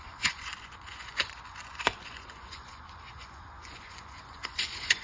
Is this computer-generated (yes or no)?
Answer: yes